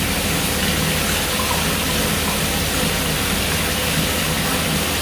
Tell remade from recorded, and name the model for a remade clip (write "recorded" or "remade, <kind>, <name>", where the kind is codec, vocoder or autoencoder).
recorded